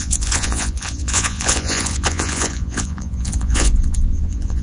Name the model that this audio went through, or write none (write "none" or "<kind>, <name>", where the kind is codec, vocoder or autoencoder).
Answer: vocoder, Vocos